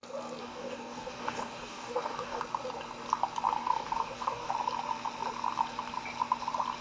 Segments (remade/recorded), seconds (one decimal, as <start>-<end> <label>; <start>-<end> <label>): 0.0-0.4 recorded; 0.4-2.4 remade; 2.4-3.6 recorded; 3.6-4.5 remade; 4.5-6.8 recorded